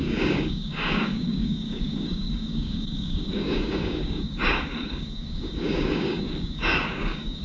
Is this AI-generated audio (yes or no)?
yes